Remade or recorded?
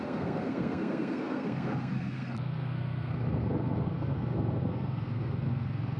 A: remade